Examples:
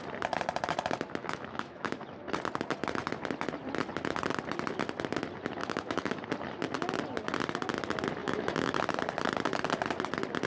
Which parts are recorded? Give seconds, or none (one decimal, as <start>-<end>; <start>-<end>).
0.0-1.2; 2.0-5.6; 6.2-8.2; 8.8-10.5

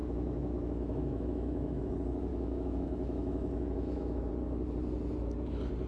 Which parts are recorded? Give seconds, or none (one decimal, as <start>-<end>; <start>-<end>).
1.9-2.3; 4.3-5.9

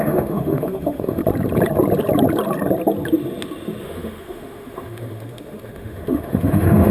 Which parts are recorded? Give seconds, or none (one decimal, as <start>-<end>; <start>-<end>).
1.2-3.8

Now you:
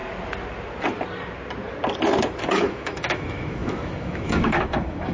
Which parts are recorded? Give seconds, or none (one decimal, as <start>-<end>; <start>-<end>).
0.0-2.4

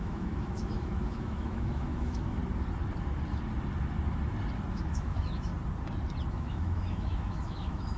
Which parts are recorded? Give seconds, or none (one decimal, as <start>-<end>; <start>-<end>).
2.4-4.7; 5.5-6.3

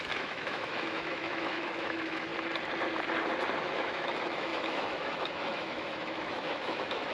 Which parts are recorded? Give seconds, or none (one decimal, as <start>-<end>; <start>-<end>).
2.3-3.6

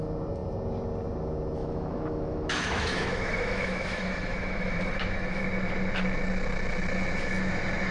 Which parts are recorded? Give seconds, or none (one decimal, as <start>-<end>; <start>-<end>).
0.0-1.6; 5.4-7.9